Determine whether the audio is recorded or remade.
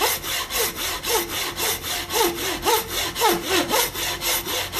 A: recorded